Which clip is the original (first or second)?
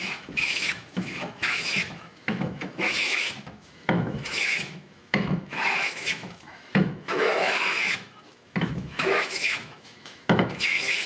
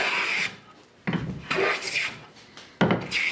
second